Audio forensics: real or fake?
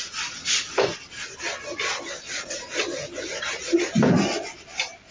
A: real